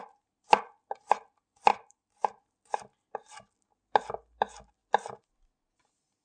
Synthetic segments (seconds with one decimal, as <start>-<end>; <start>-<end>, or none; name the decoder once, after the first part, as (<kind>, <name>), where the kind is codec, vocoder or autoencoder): none